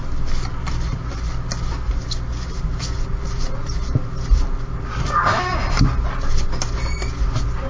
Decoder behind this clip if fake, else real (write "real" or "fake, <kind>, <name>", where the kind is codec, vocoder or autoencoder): real